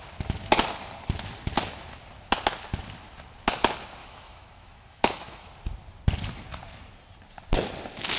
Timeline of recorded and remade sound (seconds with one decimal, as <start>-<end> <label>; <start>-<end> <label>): 0.0-4.0 recorded; 4.0-5.5 remade; 5.5-8.2 recorded